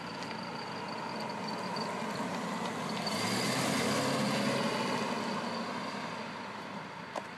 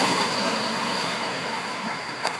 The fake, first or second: second